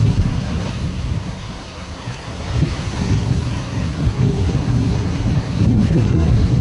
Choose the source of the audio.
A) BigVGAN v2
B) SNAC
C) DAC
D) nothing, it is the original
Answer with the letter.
B